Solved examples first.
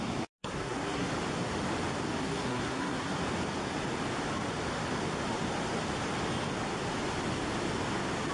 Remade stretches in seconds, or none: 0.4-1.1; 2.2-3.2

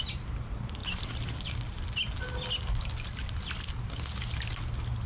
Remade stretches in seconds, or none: none

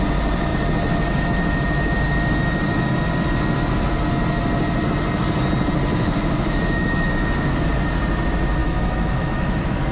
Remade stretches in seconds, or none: 5.9-7.1; 8.6-9.9

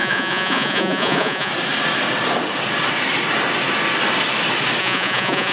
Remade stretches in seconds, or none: 0.0-1.5; 4.8-5.5

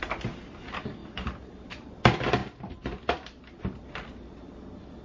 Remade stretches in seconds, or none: 1.0-1.9

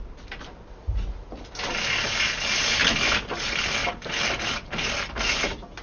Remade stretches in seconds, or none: none